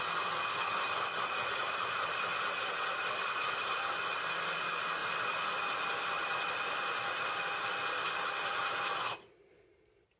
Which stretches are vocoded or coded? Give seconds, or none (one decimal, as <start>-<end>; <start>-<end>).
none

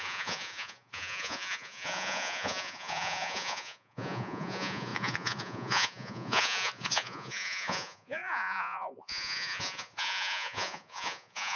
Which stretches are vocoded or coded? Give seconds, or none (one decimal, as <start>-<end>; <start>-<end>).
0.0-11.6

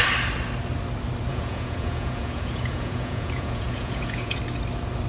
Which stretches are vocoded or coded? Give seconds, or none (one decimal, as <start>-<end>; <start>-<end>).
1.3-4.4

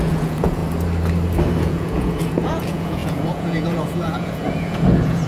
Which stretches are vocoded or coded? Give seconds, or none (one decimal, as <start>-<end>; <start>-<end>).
0.0-0.6; 1.6-5.3